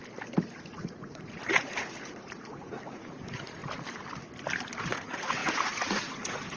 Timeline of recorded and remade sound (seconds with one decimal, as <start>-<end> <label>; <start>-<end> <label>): 0.0-0.7 recorded; 0.7-3.6 remade; 3.6-4.8 recorded; 4.8-6.6 remade